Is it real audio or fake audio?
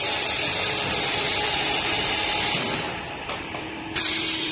fake